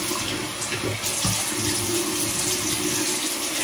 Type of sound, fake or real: real